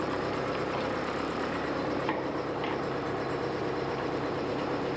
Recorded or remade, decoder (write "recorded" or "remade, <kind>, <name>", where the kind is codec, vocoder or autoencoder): remade, vocoder, BigVGAN v2